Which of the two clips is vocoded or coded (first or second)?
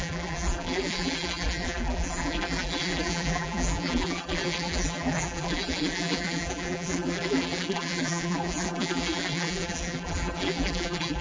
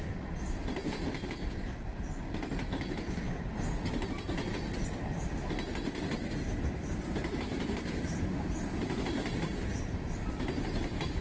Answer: first